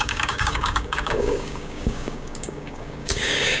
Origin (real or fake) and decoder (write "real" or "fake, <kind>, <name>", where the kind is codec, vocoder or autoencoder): fake, codec, DAC